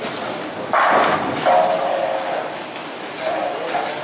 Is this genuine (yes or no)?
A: yes